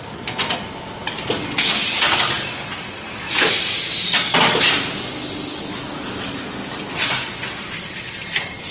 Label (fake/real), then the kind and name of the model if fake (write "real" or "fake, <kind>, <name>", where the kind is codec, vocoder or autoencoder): real